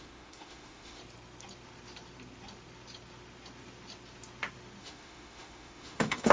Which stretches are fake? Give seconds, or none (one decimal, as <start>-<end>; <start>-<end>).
0.0-1.0; 4.8-6.3